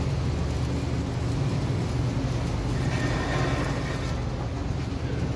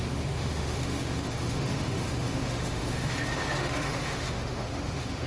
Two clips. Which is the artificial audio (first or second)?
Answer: second